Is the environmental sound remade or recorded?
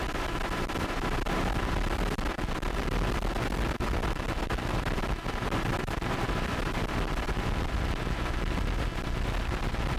remade